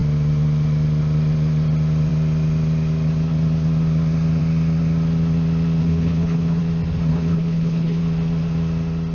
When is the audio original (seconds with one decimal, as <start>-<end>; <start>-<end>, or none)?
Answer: 0.0-5.8; 6.6-7.1; 8.0-9.1